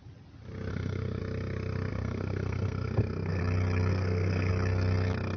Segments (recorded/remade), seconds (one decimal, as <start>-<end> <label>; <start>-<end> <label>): 0.0-0.7 recorded; 0.7-1.2 remade; 1.2-1.9 recorded; 1.9-3.4 remade; 3.4-3.9 recorded; 3.9-4.5 remade; 4.5-5.4 recorded